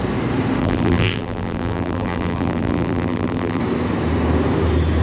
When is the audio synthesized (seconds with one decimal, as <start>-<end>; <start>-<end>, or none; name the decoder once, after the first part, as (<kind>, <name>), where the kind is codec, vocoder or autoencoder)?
0.6-3.6 (vocoder, BigVGAN v2)

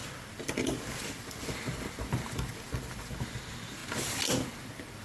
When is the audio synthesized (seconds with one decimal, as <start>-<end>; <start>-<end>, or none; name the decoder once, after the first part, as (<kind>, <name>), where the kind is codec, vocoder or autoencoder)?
0.0-3.8 (vocoder, BigVGAN v2); 4.5-5.0

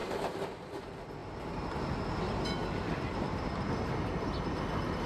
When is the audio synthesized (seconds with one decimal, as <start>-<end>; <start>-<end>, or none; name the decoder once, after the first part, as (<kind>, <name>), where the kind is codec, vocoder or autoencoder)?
0.0-0.6 (vocoder, BigVGAN v2); 1.2-1.9; 2.6-3.5

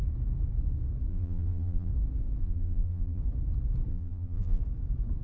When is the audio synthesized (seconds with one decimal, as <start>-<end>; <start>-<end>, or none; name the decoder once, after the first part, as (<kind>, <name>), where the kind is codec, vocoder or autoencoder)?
1.1-1.9 (vocoder, BigVGAN v2); 2.4-3.2; 3.9-4.6

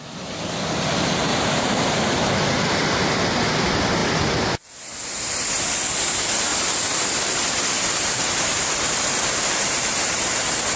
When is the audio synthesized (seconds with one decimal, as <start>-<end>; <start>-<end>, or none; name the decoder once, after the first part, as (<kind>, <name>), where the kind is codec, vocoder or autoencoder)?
1.3-2.2 (vocoder, BigVGAN v2); 6.5-9.8

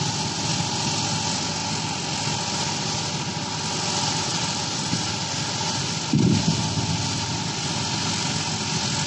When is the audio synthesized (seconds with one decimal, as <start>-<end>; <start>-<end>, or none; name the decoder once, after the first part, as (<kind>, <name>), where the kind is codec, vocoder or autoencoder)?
1.6-2.2 (vocoder, BigVGAN v2); 4.3-6.3

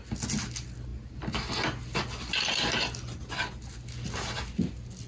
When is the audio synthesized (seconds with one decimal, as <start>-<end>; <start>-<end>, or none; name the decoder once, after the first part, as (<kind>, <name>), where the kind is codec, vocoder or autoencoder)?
none

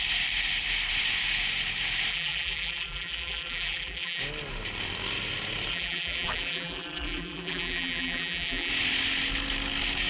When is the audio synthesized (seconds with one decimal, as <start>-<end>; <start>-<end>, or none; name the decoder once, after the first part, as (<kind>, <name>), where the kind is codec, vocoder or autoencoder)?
2.1-4.2 (vocoder, BigVGAN v2); 5.7-8.7